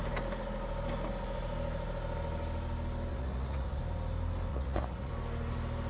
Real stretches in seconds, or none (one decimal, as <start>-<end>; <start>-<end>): 0.0-3.1; 3.8-4.5; 5.1-5.9